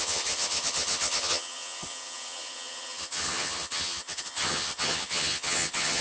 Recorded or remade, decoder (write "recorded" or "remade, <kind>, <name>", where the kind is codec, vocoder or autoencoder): remade, vocoder, HiFi-GAN